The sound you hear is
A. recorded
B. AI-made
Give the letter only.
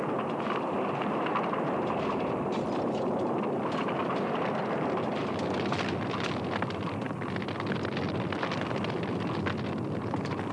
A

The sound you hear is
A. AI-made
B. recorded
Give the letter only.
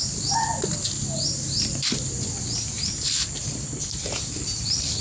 B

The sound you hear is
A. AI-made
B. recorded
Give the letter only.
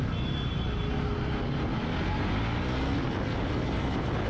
B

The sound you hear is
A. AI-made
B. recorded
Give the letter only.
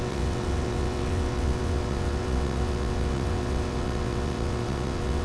A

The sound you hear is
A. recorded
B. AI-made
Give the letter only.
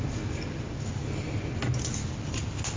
A